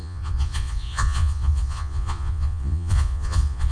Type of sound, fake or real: fake